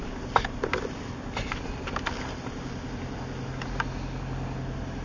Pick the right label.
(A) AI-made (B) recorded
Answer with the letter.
B